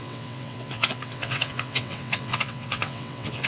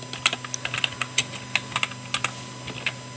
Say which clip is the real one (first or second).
second